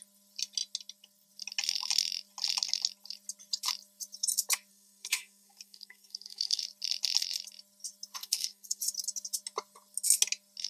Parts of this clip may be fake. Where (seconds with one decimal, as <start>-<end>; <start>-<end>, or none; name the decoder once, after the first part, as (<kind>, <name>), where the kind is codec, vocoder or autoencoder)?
4.7-6.6 (codec, SNAC); 8.2-8.8